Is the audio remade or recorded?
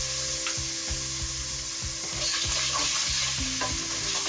recorded